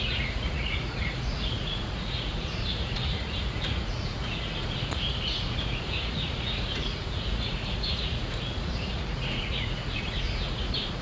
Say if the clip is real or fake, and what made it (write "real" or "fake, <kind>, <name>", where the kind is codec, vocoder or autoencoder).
fake, vocoder, Vocos